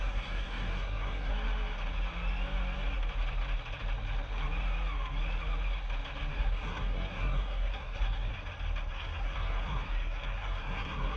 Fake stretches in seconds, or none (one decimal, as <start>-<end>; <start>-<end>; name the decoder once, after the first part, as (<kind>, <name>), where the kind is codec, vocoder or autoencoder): 0.0-1.3 (codec, SNAC); 6.3-8.3; 8.9-11.2